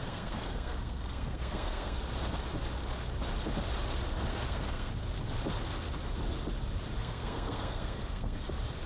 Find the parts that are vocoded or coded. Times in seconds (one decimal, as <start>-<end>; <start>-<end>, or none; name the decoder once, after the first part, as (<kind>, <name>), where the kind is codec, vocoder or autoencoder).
0.0-2.0 (codec, SNAC); 4.3-4.9; 7.0-8.5